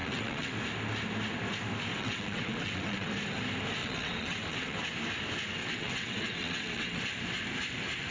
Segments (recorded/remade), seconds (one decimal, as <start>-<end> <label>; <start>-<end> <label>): 0.0-0.5 remade; 0.5-1.9 recorded; 1.9-3.1 remade; 3.1-3.8 recorded; 3.8-4.8 remade; 4.8-5.6 recorded; 5.6-7.0 remade; 7.0-8.1 recorded